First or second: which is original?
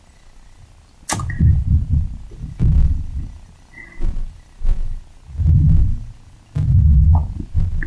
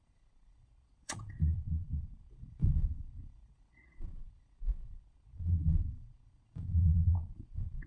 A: first